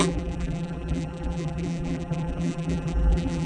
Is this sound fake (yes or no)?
yes